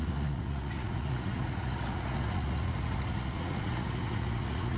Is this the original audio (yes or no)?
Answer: no